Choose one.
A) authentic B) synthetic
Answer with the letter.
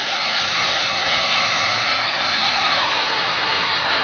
B